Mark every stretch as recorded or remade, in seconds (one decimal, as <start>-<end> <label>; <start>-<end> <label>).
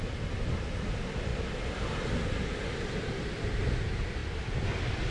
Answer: 0.0-5.1 recorded